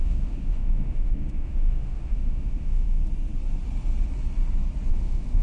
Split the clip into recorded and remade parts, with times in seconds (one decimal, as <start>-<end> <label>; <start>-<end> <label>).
0.0-3.0 remade; 3.0-4.9 recorded; 4.9-5.4 remade